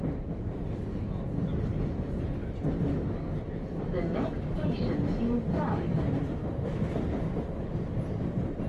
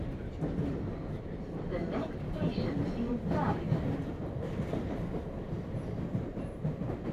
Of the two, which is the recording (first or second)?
first